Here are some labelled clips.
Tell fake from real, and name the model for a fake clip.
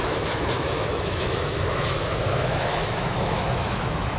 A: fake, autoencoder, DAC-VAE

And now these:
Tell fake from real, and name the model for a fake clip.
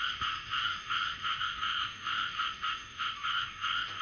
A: fake, autoencoder, DAC-VAE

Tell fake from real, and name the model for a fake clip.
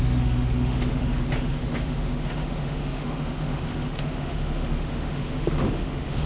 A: fake, autoencoder, DAC-VAE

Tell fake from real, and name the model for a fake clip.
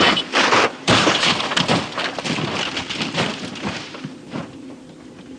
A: real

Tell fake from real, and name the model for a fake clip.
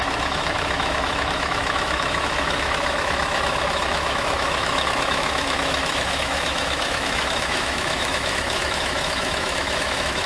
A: fake, autoencoder, DAC-VAE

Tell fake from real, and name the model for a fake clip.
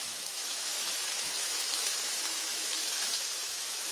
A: fake, autoencoder, DAC-VAE